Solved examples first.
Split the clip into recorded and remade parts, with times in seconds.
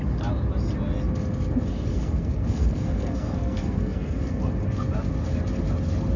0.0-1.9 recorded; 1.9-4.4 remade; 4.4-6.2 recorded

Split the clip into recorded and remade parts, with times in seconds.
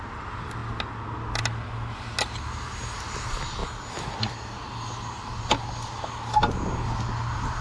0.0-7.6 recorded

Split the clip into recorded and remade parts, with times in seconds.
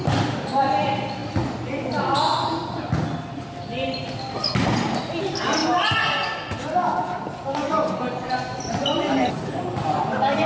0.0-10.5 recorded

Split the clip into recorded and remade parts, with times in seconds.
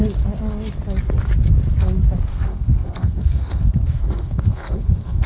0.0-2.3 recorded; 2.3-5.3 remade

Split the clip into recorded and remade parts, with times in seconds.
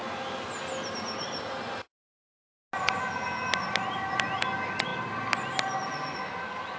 0.0-6.8 recorded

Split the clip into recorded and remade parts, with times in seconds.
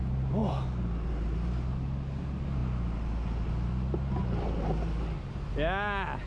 0.0-6.3 recorded